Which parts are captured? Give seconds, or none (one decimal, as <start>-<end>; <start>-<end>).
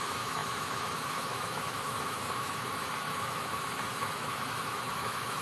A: none